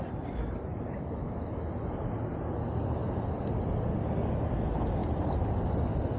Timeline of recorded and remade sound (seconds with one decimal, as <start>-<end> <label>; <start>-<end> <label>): 0.0-0.7 recorded; 0.7-1.6 remade; 1.6-6.2 recorded